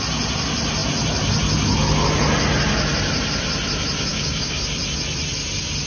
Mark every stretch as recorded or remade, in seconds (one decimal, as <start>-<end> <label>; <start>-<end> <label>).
0.0-4.1 recorded; 4.1-4.6 remade; 4.6-5.9 recorded